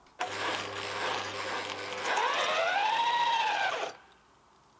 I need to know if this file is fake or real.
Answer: real